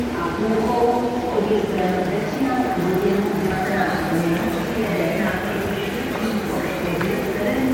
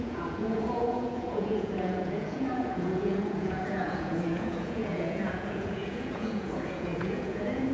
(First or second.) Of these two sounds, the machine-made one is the second